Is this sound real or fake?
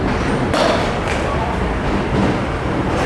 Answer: real